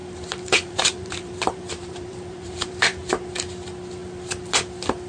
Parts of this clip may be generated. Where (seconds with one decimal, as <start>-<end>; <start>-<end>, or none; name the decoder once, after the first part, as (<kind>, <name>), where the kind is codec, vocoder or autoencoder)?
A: 0.0-3.1 (vocoder, BigVGAN v2)